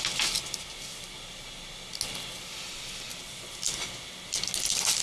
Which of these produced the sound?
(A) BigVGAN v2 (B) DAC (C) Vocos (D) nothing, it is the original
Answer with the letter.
D